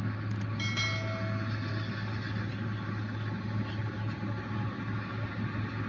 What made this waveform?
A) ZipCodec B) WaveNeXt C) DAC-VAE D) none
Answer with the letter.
D